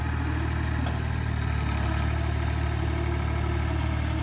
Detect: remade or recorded recorded